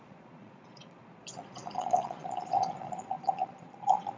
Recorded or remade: remade